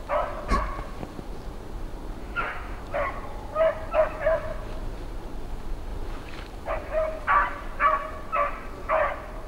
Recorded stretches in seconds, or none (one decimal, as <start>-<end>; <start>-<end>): 0.0-2.2; 2.8-9.5